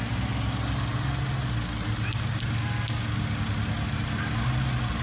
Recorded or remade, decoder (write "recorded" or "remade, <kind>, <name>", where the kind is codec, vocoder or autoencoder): recorded